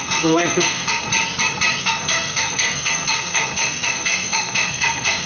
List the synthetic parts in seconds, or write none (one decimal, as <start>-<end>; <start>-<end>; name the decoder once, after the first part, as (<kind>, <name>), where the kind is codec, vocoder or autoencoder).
0.0-1.1 (codec, SNAC); 1.8-5.3